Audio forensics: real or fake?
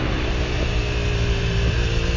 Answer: real